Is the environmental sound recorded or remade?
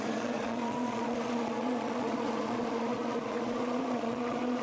remade